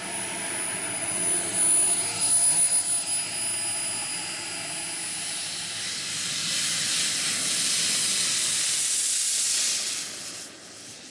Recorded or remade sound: recorded